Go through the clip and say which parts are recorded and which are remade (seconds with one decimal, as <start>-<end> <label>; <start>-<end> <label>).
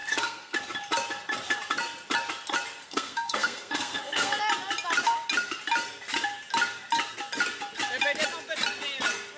0.0-0.6 remade; 0.6-2.8 recorded; 2.8-4.4 remade; 4.4-9.4 recorded